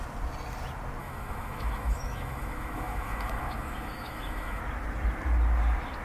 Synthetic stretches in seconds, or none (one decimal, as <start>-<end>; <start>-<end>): 1.0-4.6